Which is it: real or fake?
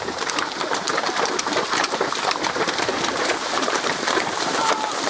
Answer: fake